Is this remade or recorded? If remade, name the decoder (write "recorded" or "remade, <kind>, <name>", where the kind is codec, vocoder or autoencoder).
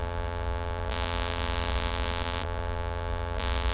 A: remade, vocoder, BigVGAN v2